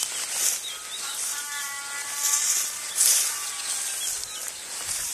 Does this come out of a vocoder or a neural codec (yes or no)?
no